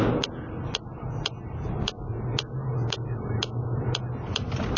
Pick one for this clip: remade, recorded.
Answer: recorded